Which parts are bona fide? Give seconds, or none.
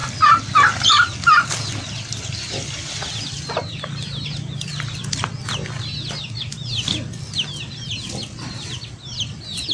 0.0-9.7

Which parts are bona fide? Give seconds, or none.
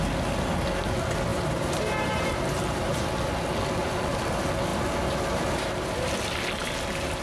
0.0-1.3; 3.1-7.2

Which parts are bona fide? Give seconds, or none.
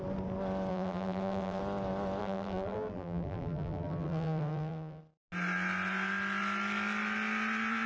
0.0-0.7; 1.6-2.2; 5.0-7.9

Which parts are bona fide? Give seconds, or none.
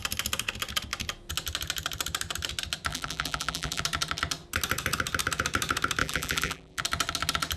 0.0-2.9; 3.8-6.0; 6.8-7.6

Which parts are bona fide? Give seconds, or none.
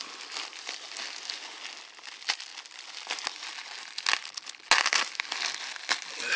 0.0-6.4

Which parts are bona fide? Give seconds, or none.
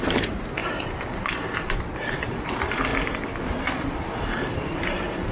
2.9-3.6